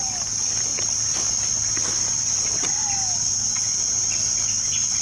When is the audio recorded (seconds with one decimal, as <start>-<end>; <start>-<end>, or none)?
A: 0.0-5.0